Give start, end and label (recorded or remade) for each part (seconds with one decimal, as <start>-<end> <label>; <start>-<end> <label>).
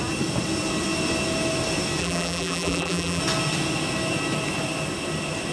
0.0-2.0 recorded; 2.0-3.2 remade; 3.2-5.5 recorded